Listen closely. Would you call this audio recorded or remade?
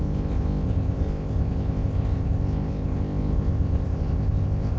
remade